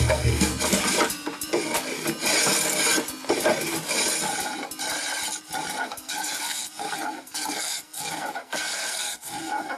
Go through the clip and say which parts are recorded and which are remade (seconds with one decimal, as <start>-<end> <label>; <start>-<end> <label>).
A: 0.0-0.5 remade; 0.5-5.8 recorded; 5.8-9.8 remade